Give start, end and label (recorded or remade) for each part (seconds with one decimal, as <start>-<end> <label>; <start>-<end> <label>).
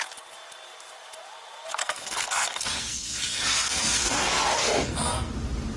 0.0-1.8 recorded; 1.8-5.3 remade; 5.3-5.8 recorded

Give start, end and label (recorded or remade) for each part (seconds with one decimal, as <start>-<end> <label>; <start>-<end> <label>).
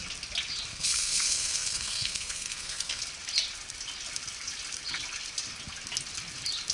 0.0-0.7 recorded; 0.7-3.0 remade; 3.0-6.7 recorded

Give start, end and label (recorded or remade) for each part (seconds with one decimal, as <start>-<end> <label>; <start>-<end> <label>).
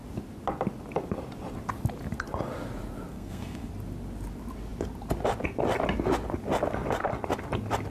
0.0-3.1 recorded; 3.1-3.7 remade; 3.7-7.9 recorded